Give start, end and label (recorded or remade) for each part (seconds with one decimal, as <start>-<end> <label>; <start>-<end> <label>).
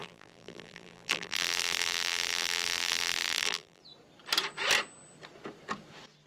0.0-3.8 remade; 3.8-6.3 recorded